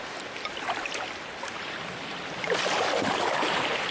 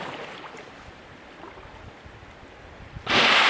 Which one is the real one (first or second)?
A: second